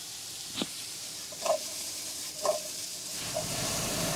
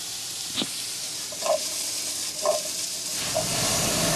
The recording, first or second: second